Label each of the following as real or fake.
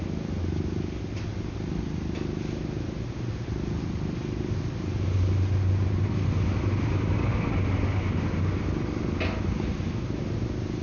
real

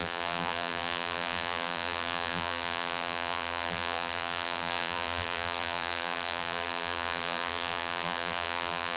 fake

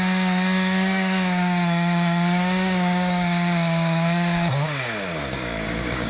fake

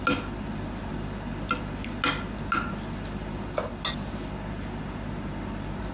real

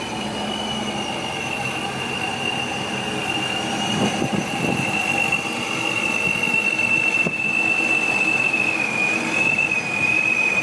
real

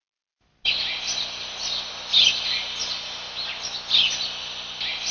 real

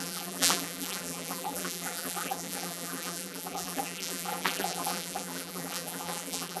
fake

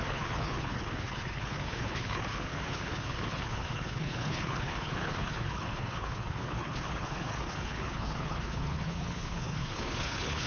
fake